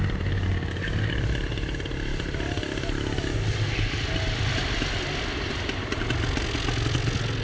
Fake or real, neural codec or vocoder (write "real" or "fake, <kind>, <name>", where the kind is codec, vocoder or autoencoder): real